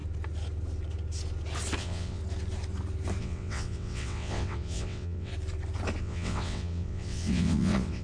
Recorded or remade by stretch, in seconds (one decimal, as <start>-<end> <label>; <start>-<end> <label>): 0.0-1.8 recorded; 1.8-2.2 remade; 2.2-3.2 recorded; 3.2-5.3 remade; 5.3-6.0 recorded; 6.0-8.0 remade